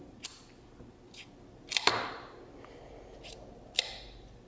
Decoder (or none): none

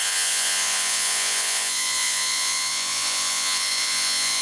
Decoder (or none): vocoder, Vocos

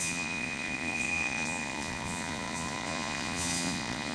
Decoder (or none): vocoder, Vocos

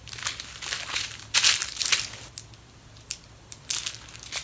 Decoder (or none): none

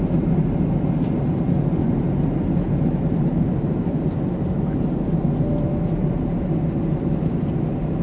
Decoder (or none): none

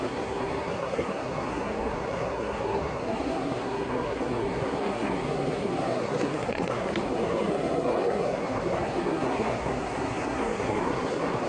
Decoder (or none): codec, SNAC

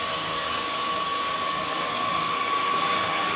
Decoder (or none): codec, DAC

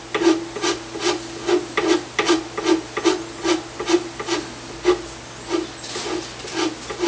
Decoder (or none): none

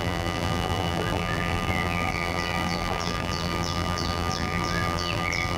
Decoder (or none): vocoder, BigVGAN v2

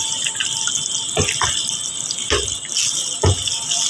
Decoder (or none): none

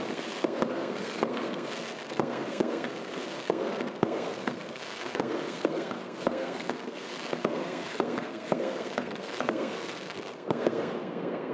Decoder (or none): codec, SNAC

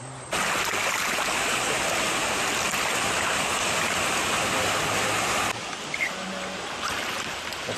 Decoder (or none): none